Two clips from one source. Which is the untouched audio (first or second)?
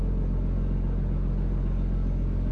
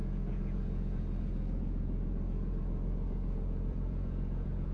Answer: first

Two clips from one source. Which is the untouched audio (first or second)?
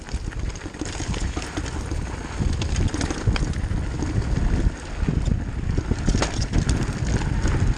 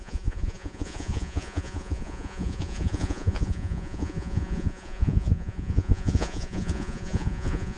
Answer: first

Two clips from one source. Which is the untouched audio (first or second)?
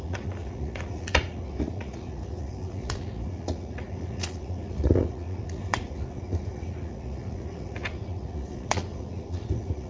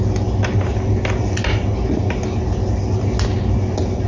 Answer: second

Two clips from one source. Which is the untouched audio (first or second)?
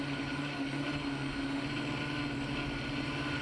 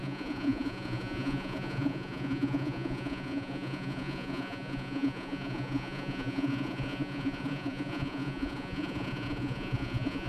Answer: first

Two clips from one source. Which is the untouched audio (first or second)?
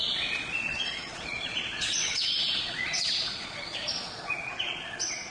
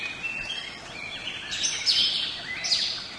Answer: second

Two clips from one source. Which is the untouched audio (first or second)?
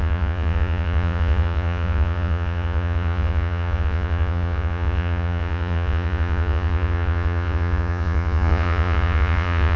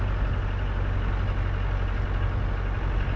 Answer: second